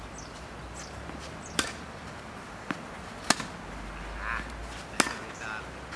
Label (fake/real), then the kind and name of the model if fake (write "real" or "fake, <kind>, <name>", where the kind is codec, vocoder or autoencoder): real